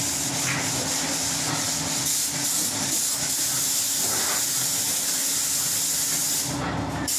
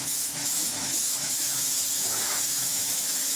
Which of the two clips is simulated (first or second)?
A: second